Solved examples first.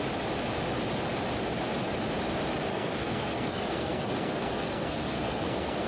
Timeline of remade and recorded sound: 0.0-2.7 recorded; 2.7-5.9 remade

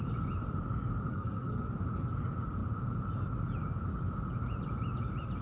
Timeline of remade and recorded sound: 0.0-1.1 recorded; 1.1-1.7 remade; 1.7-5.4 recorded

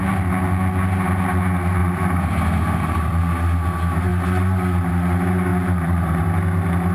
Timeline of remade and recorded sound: 0.0-1.8 recorded; 1.8-3.2 remade; 3.2-5.5 recorded; 5.5-6.2 remade; 6.2-6.9 recorded

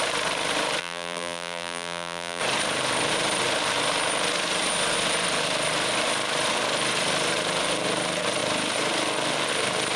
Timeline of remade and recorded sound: 0.0-0.8 recorded; 0.8-2.4 remade; 2.4-10.0 recorded

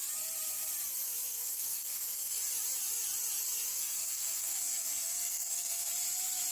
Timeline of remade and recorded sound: 0.0-1.3 recorded; 1.3-2.4 remade; 2.4-3.7 recorded; 3.7-5.9 remade; 5.9-6.5 recorded